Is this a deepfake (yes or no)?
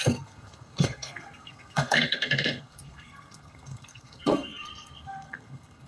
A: yes